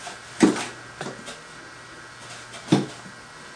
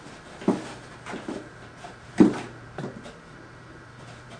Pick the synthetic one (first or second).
second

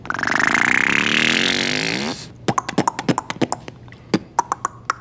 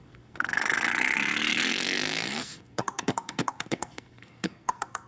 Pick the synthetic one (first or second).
second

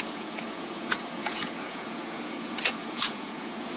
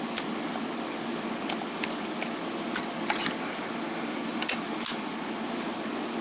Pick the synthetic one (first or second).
first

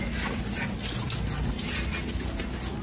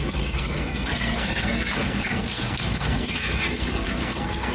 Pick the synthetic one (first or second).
second